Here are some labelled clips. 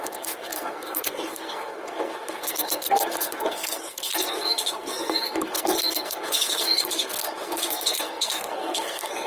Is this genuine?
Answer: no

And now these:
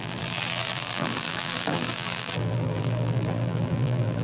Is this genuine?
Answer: no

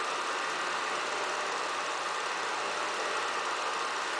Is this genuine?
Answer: yes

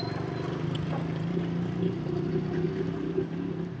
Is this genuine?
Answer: yes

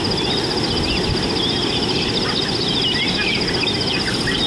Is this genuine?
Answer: yes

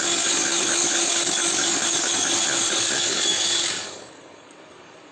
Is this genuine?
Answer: no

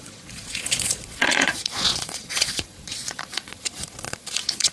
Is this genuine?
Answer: no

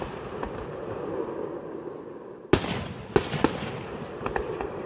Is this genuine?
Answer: yes